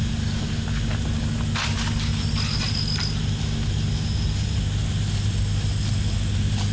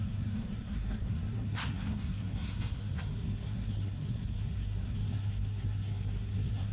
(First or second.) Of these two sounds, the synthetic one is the second